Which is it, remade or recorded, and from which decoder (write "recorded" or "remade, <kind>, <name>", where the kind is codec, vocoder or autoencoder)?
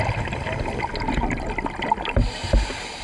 recorded